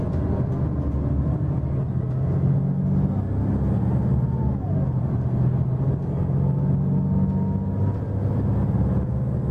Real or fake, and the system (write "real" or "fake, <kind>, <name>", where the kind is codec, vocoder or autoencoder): real